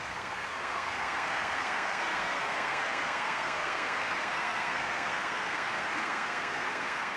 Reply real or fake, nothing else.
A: fake